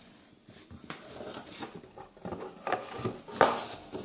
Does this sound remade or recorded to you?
recorded